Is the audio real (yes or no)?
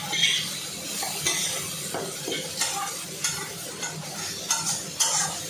yes